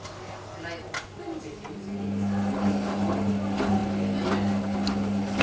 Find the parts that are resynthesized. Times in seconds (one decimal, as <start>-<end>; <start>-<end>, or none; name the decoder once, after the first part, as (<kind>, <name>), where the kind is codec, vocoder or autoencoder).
none